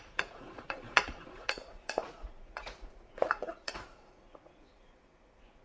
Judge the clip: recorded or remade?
remade